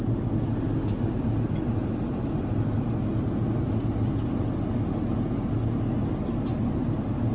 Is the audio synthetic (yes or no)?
no